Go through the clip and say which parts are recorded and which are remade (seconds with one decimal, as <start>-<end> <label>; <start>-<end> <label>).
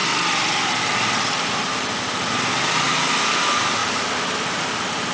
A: 0.0-5.1 recorded